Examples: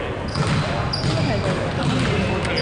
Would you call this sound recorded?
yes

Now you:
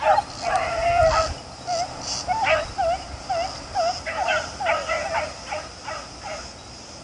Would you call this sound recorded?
yes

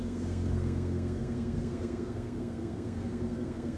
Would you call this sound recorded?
no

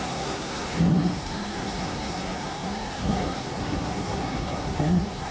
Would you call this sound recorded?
no